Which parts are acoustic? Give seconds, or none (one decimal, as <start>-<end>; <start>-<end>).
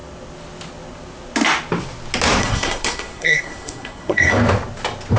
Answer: 0.0-2.4; 4.3-5.2